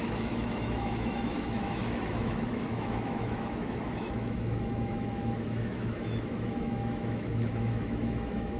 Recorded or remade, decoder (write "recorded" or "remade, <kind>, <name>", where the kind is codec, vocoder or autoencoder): remade, autoencoder, DAC-VAE